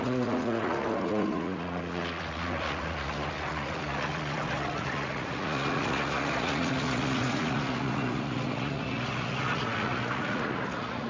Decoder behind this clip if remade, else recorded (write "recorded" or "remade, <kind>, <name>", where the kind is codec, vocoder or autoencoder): remade, vocoder, Vocos